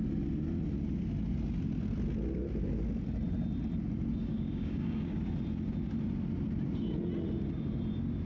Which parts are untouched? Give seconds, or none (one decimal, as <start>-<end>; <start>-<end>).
0.0-4.2; 5.2-8.3